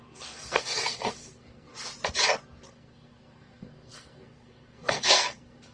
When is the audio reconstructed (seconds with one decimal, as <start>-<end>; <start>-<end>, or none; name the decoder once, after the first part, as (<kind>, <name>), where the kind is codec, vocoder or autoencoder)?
0.0-1.7 (codec, SNAC); 2.7-5.7